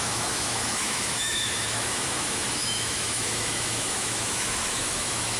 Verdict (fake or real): fake